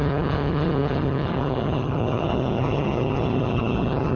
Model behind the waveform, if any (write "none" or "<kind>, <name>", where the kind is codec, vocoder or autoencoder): vocoder, HiFi-GAN